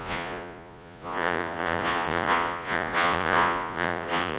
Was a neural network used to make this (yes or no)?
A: yes